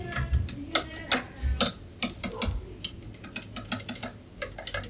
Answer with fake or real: real